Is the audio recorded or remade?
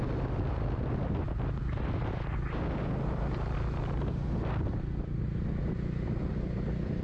recorded